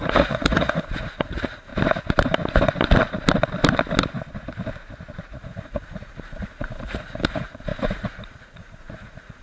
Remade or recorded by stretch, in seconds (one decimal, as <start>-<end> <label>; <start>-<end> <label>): 0.0-1.7 remade; 1.7-5.4 recorded; 5.4-9.4 remade